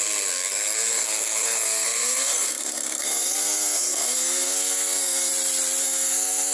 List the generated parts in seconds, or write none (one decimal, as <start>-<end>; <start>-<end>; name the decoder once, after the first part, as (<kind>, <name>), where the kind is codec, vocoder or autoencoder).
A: 0.0-5.3 (codec, SNAC); 5.8-6.5

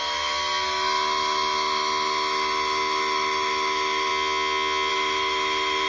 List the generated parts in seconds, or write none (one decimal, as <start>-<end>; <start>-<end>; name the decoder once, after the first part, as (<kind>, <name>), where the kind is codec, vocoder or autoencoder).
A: 0.0-4.1 (autoencoder, DAC-VAE); 4.9-5.9

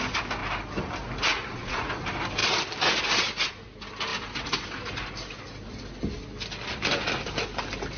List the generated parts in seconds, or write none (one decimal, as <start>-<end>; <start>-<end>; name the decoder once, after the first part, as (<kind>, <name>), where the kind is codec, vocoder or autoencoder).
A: 1.3-1.9 (vocoder, Vocos)

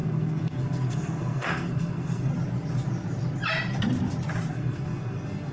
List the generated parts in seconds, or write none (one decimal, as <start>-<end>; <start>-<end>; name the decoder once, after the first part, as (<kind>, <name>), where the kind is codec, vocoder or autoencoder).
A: 0.0-2.3 (codec, SNAC); 4.5-5.5

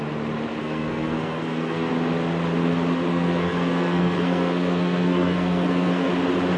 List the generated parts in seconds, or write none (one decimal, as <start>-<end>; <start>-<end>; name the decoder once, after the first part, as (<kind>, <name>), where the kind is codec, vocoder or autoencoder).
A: 0.6-1.9 (codec, SNAC); 3.1-6.1

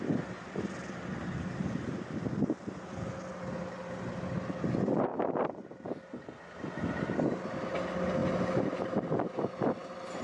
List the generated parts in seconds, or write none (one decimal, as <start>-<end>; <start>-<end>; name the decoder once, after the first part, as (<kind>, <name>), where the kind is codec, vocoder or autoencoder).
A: none

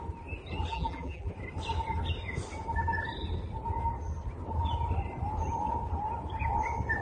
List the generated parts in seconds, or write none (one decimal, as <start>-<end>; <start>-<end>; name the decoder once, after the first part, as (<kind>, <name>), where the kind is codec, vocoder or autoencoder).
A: 0.7-1.3 (vocoder, BigVGAN v2)